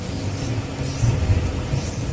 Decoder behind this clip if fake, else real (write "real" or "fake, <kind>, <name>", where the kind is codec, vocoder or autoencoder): real